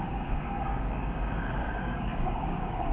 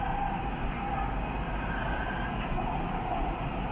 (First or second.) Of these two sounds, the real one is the second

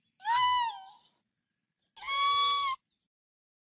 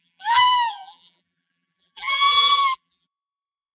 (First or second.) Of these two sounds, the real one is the first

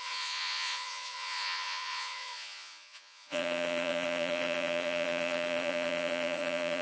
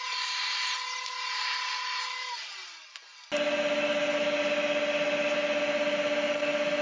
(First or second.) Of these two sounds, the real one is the second